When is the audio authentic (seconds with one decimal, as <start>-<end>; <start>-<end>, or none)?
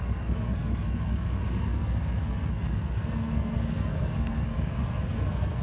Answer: none